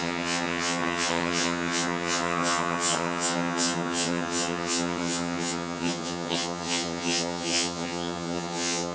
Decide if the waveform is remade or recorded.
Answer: remade